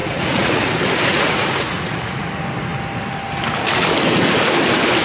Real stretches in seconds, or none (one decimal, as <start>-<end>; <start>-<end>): 0.6-1.1; 2.3-5.0